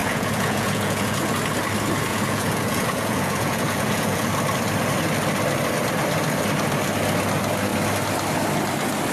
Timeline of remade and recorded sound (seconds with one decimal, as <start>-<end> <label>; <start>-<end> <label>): 0.0-1.3 remade; 1.3-2.1 recorded; 2.1-4.3 remade; 4.3-9.1 recorded